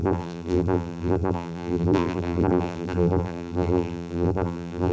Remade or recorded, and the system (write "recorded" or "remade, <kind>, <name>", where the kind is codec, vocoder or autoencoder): remade, vocoder, BigVGAN v2